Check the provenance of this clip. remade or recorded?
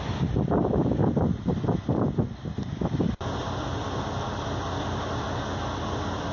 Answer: recorded